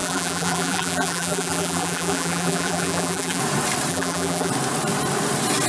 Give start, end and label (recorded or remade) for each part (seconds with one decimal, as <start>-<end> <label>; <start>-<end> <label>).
0.0-3.4 remade; 3.4-3.9 recorded; 3.9-4.5 remade; 4.5-5.7 recorded